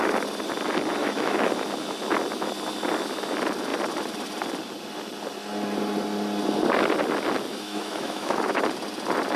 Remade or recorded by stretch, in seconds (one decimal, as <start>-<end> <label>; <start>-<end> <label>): 0.0-1.0 recorded; 1.0-1.5 remade; 1.5-7.5 recorded; 7.5-8.6 remade; 8.6-9.4 recorded